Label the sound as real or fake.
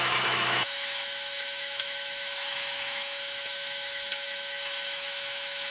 fake